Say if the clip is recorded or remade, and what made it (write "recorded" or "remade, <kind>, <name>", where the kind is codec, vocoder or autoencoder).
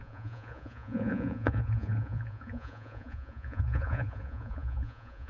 remade, vocoder, Vocos